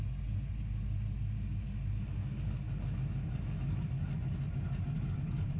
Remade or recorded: recorded